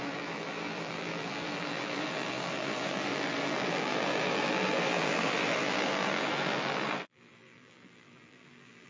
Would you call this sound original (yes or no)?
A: no